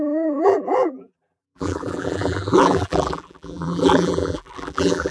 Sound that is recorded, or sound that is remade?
remade